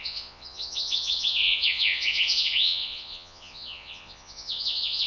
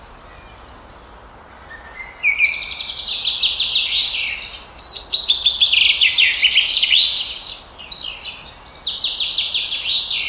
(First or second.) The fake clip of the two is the first